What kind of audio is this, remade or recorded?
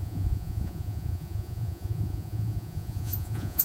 remade